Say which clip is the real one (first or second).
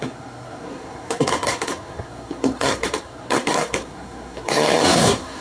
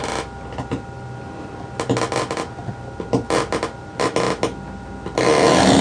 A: second